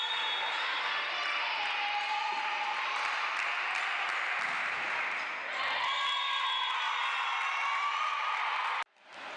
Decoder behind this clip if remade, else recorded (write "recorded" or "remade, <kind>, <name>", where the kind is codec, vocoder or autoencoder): recorded